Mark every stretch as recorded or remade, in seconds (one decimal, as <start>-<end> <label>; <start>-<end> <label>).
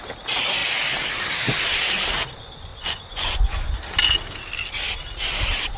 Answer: 0.0-2.7 recorded; 2.7-3.7 remade; 3.7-5.8 recorded